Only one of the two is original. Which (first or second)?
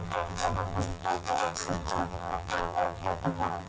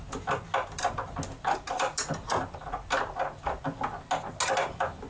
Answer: second